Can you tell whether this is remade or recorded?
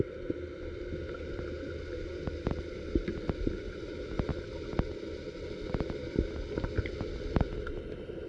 recorded